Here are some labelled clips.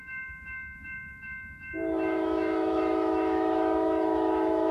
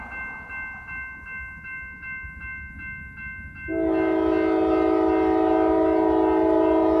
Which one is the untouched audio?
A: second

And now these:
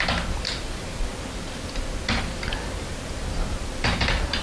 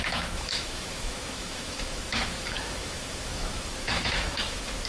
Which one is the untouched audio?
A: first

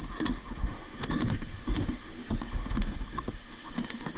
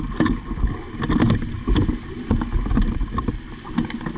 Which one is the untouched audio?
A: second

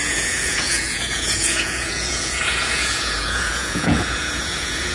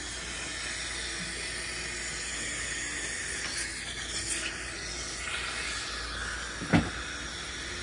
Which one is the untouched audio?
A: second